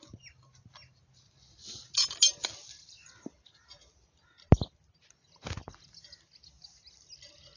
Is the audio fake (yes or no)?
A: no